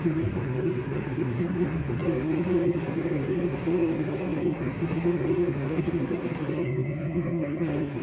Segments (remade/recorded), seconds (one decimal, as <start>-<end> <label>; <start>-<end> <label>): 0.0-8.0 remade